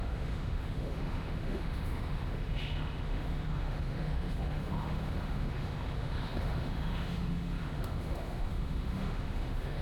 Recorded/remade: remade